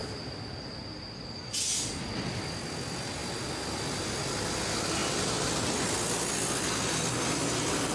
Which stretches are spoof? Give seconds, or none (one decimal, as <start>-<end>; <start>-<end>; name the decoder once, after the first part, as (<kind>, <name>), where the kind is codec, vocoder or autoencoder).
none